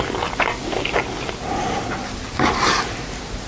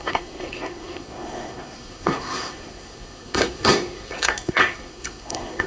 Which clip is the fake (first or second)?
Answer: second